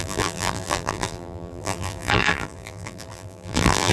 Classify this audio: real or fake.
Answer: fake